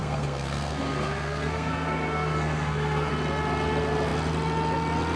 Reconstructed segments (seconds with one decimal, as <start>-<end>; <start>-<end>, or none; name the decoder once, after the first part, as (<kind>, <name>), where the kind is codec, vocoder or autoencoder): 0.0-3.1 (codec, SNAC)